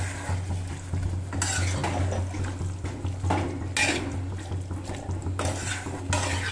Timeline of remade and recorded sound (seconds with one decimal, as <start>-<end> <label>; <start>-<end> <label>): 0.0-6.5 recorded